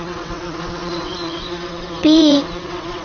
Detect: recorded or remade remade